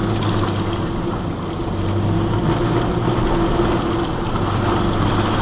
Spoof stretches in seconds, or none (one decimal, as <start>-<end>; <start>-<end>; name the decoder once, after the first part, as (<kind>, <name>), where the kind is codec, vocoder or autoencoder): none